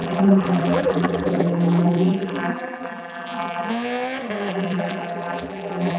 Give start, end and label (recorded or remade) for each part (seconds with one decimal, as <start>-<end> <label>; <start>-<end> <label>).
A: 0.0-3.7 remade; 3.7-4.5 recorded; 4.5-6.0 remade